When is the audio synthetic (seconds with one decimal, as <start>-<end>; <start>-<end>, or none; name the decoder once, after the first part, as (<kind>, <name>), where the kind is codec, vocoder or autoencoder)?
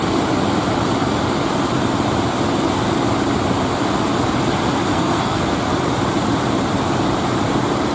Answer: 4.9-5.4 (codec, SNAC)